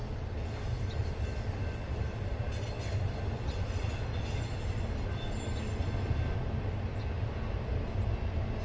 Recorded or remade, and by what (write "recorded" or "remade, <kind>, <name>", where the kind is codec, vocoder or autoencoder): recorded